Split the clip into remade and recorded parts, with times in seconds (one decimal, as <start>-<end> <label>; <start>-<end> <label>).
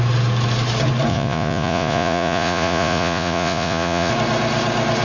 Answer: 0.0-1.1 recorded; 1.1-4.1 remade; 4.1-5.0 recorded